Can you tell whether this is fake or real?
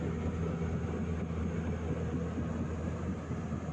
real